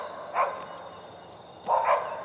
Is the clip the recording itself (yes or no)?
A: yes